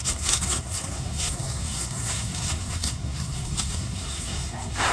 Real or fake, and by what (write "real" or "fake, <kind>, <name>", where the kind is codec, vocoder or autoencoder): fake, codec, SNAC